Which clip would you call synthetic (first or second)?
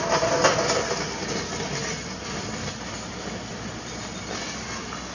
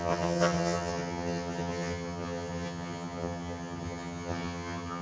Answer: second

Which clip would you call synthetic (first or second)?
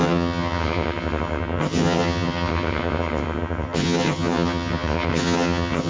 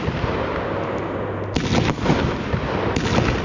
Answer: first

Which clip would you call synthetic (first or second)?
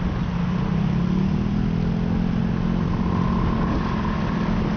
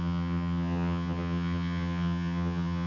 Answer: second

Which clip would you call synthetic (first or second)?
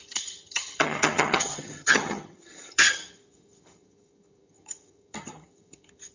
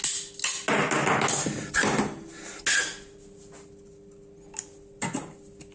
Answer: first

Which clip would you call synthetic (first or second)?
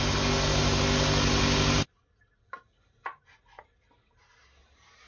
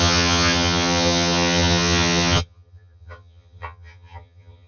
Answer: second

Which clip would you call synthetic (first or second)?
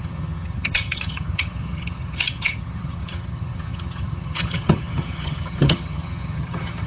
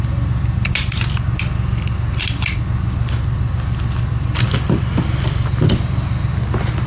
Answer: first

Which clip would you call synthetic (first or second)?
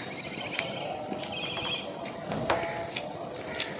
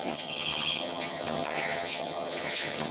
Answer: second